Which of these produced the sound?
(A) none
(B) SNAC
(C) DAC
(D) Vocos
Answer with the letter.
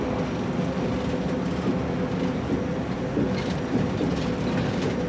A